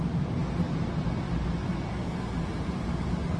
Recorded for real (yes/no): yes